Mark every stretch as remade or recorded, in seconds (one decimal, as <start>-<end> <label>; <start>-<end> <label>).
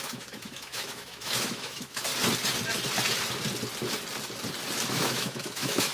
0.0-2.1 remade; 2.1-4.9 recorded; 4.9-5.9 remade